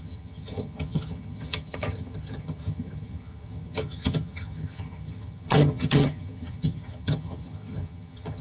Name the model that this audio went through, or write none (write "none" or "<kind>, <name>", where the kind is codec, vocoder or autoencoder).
vocoder, HiFi-GAN